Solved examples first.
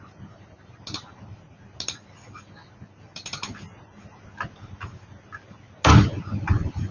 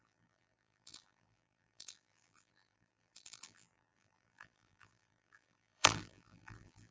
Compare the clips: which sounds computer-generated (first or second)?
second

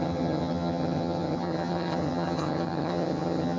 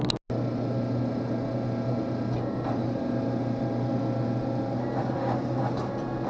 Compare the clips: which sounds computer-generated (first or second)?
first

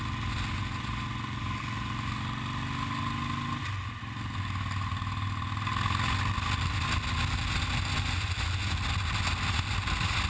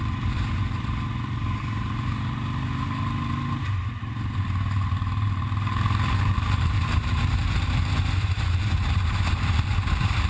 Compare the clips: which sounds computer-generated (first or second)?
second